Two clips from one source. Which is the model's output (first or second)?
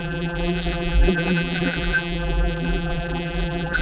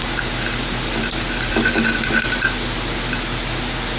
first